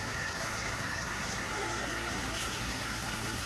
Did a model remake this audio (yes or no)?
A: yes